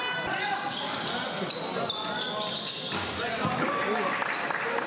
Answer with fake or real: real